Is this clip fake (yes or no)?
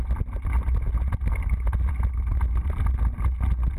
no